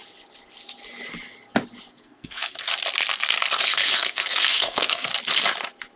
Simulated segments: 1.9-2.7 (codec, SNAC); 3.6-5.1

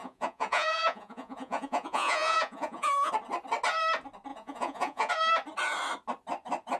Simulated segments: 0.0-3.1 (vocoder, Vocos); 4.3-5.1

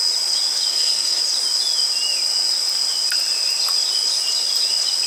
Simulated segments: 0.7-1.2 (codec, SNAC)